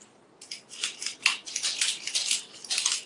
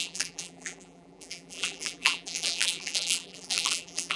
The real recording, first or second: first